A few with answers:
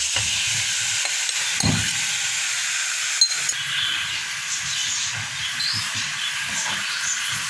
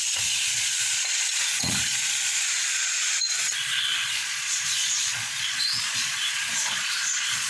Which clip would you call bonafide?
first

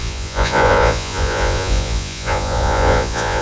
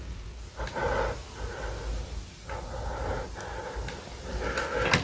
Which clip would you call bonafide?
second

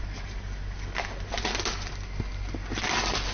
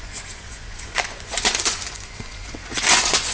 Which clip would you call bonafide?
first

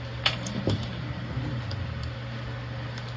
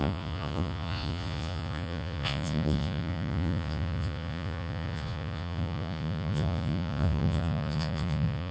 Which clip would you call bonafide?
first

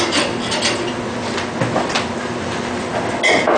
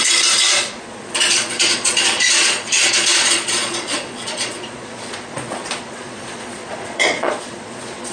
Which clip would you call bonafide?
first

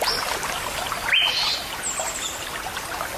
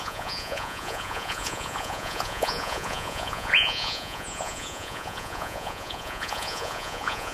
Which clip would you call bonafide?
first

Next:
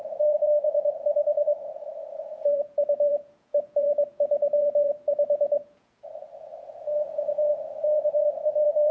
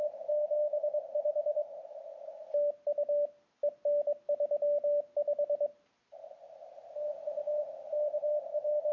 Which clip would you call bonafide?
second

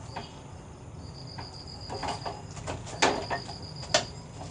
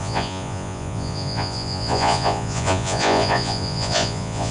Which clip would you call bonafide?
first